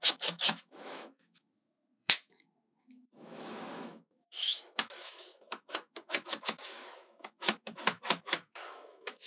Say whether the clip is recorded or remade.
remade